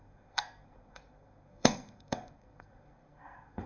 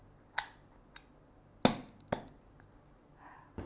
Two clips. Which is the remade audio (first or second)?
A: first